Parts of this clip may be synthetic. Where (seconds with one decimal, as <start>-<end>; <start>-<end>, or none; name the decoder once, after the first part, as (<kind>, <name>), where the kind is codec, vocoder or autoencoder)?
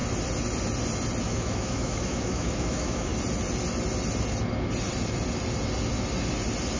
1.2-3.1 (autoencoder, DAC-VAE)